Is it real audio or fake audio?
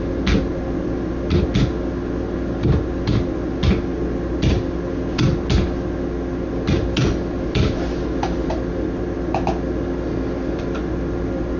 real